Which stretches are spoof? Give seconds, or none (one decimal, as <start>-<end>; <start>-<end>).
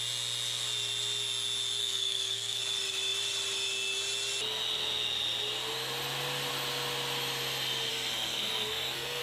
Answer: 1.8-2.6; 7.9-9.2